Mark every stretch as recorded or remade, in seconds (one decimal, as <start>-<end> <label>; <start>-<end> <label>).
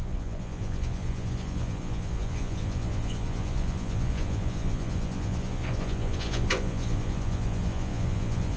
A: 0.0-8.6 remade